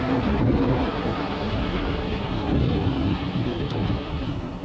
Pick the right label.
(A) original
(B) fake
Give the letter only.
B